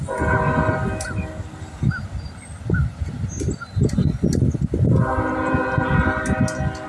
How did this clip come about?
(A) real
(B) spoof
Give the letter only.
A